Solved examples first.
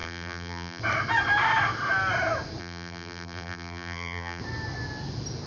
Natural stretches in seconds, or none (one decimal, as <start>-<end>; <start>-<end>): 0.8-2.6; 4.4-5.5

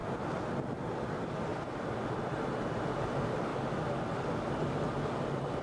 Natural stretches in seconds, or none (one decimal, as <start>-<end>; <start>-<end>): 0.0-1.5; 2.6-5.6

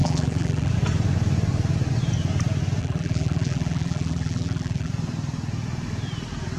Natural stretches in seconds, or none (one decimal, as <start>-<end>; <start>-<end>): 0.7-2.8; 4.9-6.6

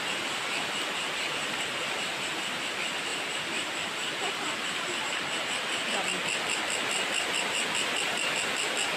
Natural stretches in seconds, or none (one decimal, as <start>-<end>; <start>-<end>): 0.0-3.1; 6.0-9.0

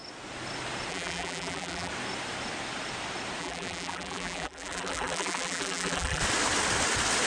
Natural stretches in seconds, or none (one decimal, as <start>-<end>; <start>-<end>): 0.0-0.9; 1.9-3.4; 6.2-7.3